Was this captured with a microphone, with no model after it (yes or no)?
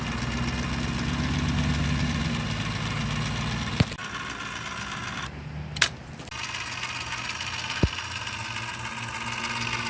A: yes